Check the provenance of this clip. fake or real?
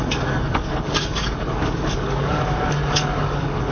fake